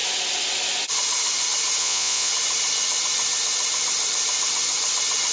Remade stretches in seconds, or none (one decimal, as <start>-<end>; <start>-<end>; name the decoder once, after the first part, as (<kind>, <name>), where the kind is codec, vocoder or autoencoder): 1.8-2.3 (vocoder, Vocos)